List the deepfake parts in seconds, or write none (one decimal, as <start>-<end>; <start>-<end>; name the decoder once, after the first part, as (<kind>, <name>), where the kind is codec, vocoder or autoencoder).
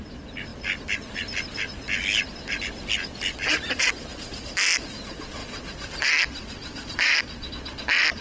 5.4-7.5 (vocoder, BigVGAN v2)